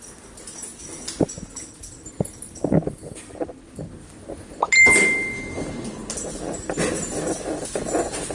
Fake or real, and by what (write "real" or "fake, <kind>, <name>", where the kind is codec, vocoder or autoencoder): real